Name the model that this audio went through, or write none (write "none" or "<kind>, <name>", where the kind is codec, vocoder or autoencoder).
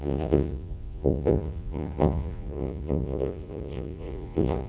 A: vocoder, Vocos